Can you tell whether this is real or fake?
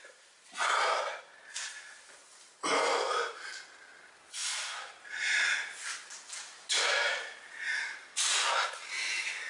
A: real